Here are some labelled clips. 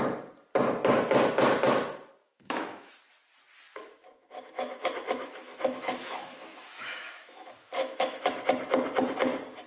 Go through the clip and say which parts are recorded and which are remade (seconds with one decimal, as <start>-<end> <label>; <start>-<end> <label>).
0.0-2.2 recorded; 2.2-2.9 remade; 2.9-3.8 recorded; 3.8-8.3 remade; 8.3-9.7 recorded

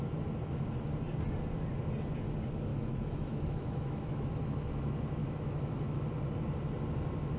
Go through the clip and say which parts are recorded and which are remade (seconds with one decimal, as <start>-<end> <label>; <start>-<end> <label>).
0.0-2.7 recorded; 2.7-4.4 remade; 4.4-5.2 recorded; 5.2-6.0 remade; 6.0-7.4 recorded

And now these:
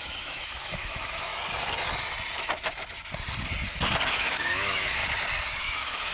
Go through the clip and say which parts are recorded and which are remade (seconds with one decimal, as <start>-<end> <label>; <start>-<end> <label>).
0.0-1.3 remade; 1.3-4.1 recorded; 4.1-5.0 remade; 5.0-5.6 recorded; 5.6-6.1 remade